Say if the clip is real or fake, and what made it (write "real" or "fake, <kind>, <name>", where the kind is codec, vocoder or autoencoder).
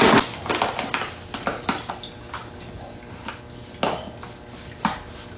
real